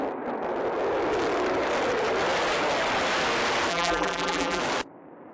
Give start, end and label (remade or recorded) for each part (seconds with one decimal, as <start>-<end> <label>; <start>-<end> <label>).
0.0-3.7 recorded; 3.7-4.6 remade; 4.6-5.3 recorded